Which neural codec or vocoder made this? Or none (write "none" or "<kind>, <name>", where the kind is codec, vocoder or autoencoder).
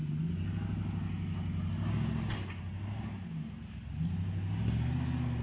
none